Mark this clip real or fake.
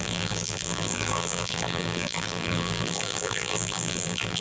fake